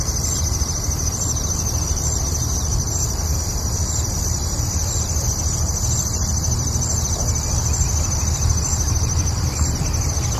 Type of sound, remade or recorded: remade